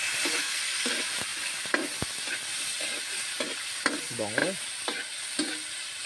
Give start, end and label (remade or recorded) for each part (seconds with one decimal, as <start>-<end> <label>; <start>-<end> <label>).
0.0-0.4 recorded; 0.4-0.9 remade; 0.9-6.1 recorded